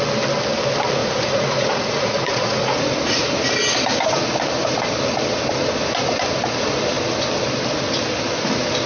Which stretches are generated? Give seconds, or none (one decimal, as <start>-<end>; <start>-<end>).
1.0-3.4